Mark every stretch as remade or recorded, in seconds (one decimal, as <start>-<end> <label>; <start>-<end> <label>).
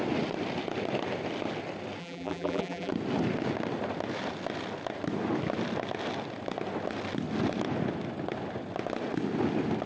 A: 0.0-2.0 recorded; 2.0-2.9 remade; 2.9-9.9 recorded